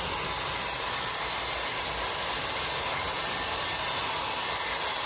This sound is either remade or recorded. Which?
recorded